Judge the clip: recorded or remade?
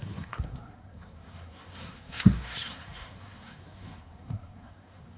remade